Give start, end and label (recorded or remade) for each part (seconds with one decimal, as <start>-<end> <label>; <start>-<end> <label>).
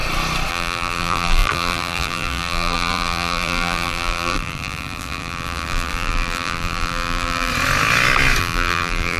0.0-0.5 recorded; 0.5-7.5 remade; 7.5-8.4 recorded; 8.4-9.2 remade